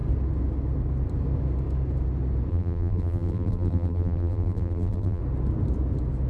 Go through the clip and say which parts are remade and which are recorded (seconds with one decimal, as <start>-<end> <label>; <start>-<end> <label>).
0.0-2.5 recorded; 2.5-5.2 remade; 5.2-6.3 recorded